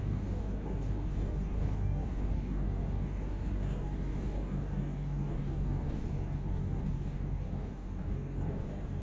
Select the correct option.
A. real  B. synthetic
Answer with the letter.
B